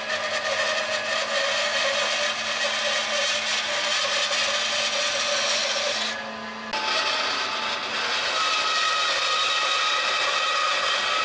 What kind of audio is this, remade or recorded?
recorded